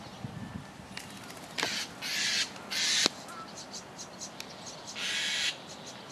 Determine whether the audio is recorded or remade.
recorded